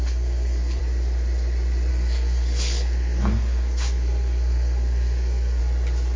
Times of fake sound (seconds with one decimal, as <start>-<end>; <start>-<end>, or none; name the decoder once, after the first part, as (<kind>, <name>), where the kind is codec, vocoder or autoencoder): 0.0-0.8 (codec, SNAC); 1.9-5.6